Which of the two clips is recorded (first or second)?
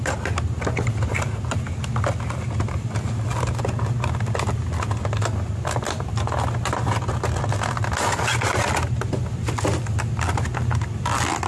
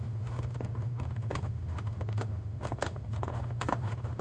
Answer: first